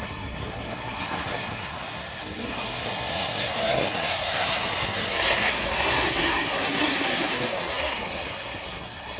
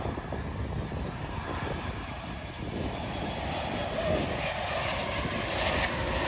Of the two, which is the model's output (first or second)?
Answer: first